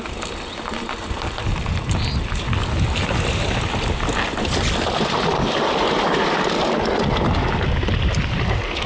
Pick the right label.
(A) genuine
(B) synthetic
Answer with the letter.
A